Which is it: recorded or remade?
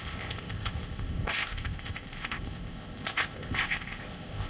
remade